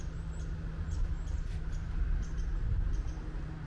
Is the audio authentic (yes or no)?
yes